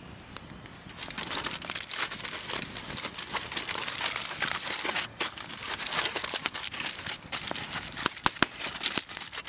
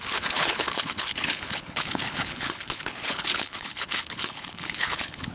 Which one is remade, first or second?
second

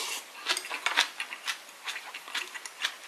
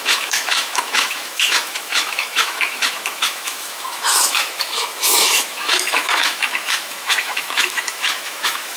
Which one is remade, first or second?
second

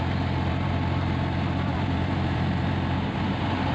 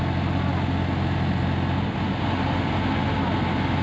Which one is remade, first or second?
first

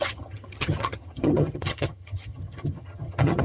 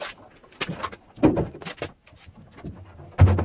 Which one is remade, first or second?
first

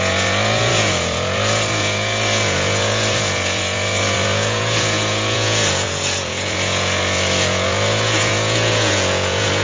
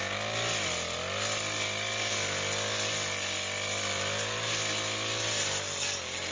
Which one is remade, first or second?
first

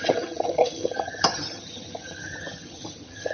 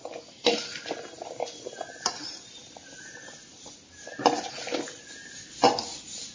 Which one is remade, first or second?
first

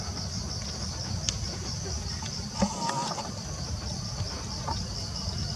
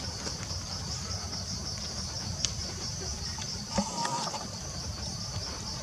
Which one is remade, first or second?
second